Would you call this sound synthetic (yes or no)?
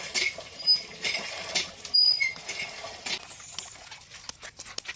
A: no